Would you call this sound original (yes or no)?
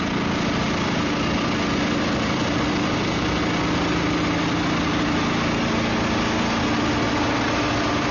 yes